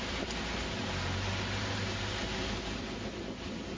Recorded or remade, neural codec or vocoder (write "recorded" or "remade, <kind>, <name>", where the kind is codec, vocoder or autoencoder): recorded